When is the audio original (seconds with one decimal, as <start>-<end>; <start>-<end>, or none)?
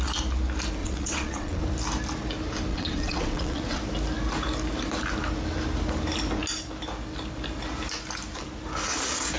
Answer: 0.0-0.8; 1.6-2.7; 3.8-9.4